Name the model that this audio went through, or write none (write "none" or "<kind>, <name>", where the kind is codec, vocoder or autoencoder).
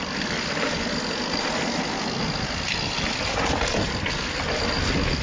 none